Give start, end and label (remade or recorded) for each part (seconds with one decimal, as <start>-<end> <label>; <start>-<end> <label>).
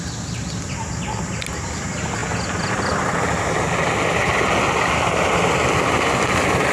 0.0-6.7 recorded